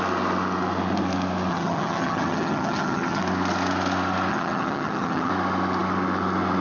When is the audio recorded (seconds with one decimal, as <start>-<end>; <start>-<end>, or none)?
0.0-1.5; 3.2-4.3; 5.3-6.6

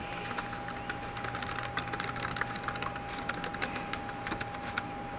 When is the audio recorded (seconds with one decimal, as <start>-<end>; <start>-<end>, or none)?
0.0-5.2